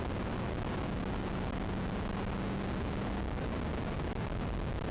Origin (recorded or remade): recorded